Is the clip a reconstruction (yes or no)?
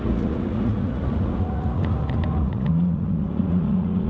yes